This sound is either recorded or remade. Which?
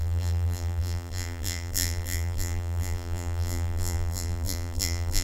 remade